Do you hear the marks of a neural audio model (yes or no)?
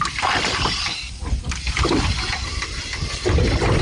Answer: no